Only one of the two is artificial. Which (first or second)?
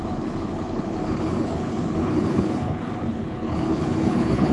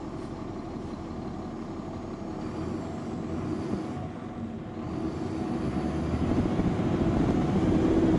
first